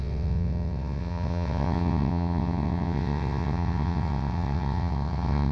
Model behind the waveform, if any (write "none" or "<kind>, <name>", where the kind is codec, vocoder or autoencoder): vocoder, WaveNeXt